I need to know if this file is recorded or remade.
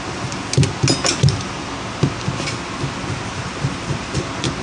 recorded